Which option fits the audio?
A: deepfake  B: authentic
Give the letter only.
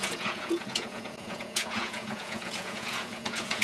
A